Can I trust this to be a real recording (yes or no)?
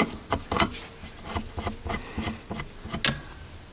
yes